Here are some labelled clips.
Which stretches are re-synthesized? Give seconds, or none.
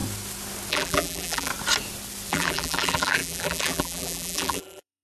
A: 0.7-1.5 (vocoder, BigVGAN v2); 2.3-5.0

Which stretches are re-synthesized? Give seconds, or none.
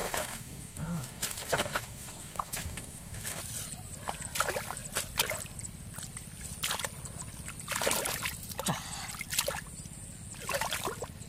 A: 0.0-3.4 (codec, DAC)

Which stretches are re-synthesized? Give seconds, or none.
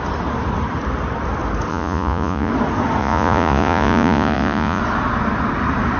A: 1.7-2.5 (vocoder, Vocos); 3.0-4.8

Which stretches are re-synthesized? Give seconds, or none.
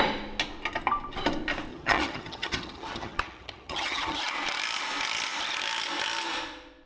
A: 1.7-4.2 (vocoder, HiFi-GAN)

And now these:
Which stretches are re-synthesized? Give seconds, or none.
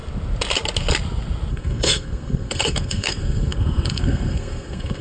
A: 1.5-5.0 (codec, SNAC)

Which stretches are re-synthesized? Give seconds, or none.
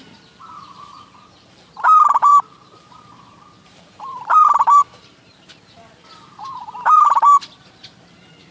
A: 0.0-8.5 (vocoder, BigVGAN v2)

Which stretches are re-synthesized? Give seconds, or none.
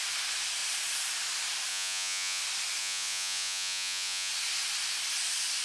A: 1.7-2.4 (vocoder, Vocos); 2.8-4.3